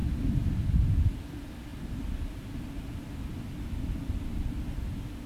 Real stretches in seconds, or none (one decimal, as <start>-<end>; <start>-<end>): 0.0-5.3